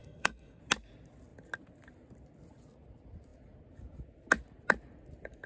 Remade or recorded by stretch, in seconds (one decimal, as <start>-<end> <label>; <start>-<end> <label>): 0.0-0.6 remade; 0.6-5.5 recorded